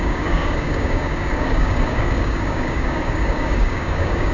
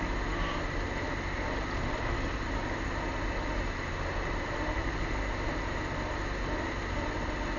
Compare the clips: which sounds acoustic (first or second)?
second